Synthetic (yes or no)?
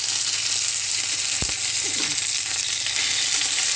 no